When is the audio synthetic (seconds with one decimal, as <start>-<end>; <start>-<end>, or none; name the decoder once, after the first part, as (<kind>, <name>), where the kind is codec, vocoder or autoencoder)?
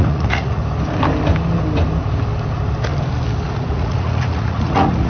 0.0-0.6 (vocoder, Vocos); 3.7-5.1